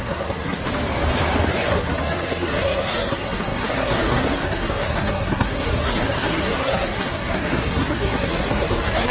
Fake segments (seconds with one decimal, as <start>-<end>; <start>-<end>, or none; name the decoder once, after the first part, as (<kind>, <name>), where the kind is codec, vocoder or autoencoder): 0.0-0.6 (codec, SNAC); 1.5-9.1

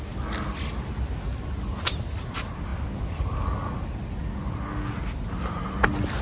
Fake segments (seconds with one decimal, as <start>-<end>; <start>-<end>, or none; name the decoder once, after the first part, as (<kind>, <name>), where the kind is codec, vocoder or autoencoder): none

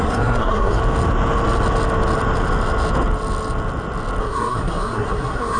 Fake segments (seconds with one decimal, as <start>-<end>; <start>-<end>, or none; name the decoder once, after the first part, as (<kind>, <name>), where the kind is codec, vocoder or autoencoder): 0.0-0.8 (codec, SNAC); 4.2-5.6

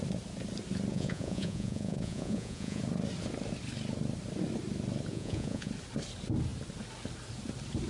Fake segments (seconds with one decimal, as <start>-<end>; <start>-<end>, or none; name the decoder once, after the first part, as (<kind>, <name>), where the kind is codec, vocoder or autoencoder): 0.9-2.8 (vocoder, Vocos); 5.1-5.7